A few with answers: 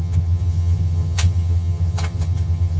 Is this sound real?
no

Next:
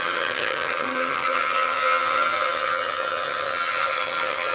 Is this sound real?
no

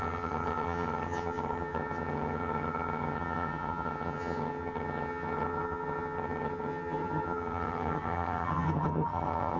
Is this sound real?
no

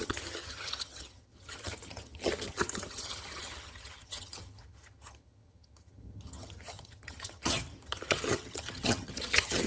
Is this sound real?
no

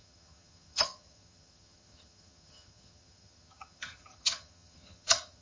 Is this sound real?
no